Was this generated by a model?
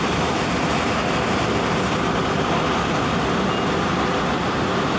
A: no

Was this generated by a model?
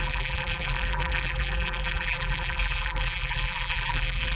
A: yes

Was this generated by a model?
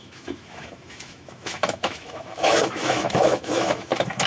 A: yes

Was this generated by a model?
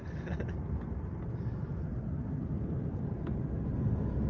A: no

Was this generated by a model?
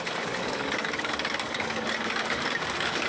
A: yes